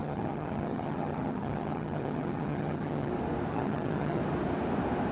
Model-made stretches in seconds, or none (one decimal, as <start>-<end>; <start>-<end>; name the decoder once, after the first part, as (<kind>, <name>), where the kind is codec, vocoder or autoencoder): 0.0-3.1 (vocoder, HiFi-GAN); 3.5-4.2